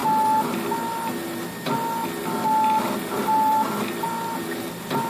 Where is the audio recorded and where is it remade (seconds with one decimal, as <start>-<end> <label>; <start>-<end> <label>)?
0.0-3.1 recorded; 3.1-3.5 remade; 3.5-5.1 recorded